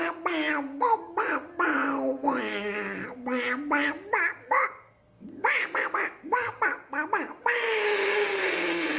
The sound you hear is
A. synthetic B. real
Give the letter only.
B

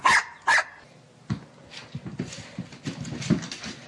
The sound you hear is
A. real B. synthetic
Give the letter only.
A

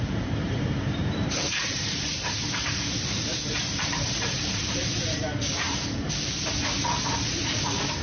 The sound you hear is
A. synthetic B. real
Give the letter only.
A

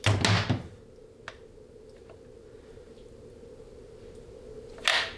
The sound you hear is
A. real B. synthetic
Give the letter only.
A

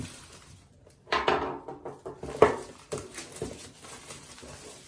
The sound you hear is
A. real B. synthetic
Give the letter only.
A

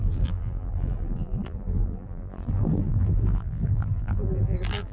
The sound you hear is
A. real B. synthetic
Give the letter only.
B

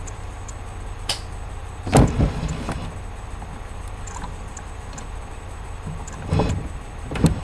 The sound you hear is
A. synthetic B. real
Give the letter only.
A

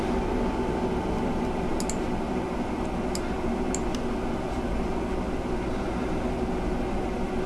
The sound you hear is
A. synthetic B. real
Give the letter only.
B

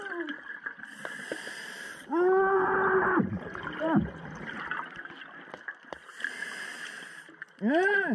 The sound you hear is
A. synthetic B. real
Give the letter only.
B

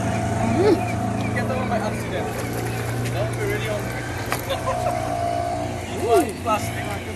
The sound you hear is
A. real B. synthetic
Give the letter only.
A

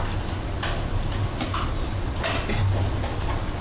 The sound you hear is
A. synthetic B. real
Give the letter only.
B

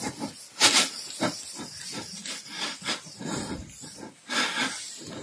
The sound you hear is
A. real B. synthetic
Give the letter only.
A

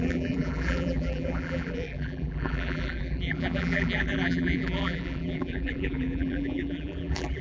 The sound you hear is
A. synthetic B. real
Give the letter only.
A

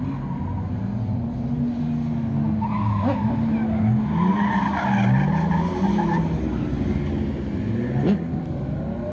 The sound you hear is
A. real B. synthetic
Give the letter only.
A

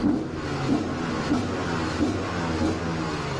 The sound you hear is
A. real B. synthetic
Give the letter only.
A